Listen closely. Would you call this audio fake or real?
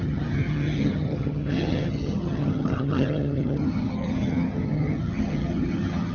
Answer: fake